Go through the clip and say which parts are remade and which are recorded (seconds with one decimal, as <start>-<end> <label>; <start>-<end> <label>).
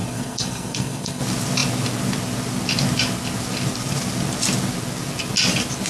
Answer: 0.0-1.2 remade; 1.2-5.9 recorded